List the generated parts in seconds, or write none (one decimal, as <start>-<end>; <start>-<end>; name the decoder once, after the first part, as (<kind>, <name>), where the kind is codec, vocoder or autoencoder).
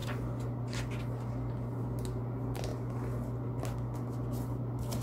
none